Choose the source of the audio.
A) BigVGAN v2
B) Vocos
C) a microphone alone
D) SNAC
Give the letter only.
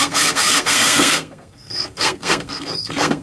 D